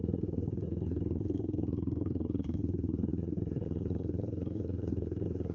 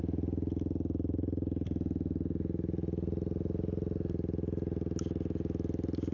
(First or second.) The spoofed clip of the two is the first